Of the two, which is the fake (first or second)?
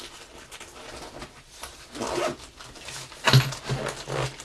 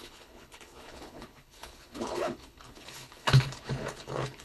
second